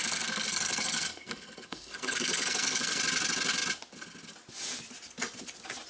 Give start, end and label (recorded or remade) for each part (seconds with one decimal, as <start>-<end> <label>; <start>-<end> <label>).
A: 0.0-3.0 remade; 3.0-5.9 recorded